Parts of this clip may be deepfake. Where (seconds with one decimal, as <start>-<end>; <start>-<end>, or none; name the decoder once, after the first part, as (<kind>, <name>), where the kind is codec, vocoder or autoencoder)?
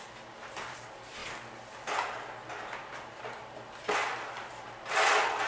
none